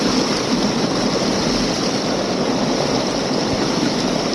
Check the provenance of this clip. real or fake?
real